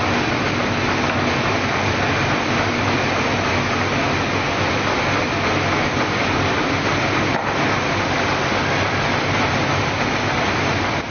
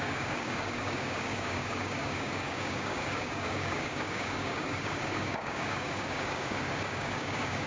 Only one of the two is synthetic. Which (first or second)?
second